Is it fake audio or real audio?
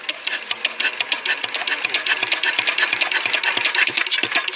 real